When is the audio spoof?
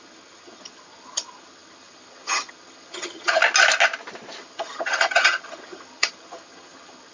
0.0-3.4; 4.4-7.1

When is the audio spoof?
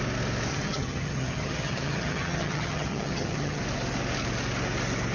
0.5-3.6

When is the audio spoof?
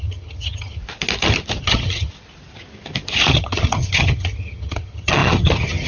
0.0-0.8; 1.6-2.1; 3.3-5.9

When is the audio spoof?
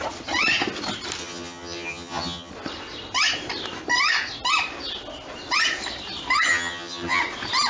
1.2-2.5; 6.5-7.2